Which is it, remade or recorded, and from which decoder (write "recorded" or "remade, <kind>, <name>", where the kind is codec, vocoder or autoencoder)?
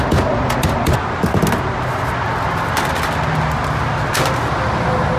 recorded